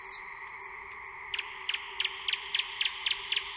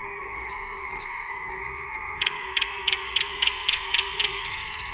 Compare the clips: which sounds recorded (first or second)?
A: first